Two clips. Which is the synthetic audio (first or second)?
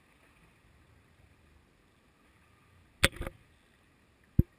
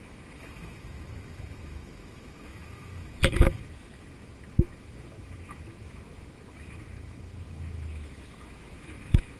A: second